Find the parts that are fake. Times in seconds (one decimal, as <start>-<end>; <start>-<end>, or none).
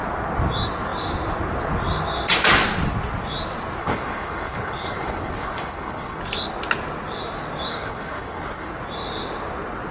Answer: 3.8-6.2; 7.7-8.7